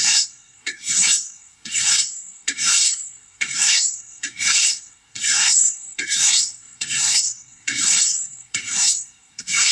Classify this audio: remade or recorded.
remade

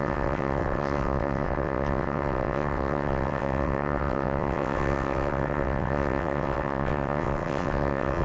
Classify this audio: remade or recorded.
remade